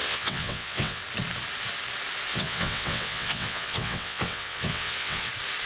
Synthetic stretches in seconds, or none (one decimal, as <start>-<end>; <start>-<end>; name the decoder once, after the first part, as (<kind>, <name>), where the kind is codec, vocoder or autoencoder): 0.0-1.0 (vocoder, WaveNeXt); 2.3-5.3